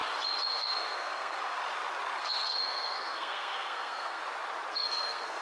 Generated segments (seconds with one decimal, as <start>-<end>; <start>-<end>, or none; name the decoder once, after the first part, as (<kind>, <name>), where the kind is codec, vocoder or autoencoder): 0.5-1.6 (codec, SNAC); 2.2-4.2; 4.7-5.4